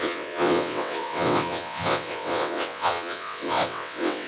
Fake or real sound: fake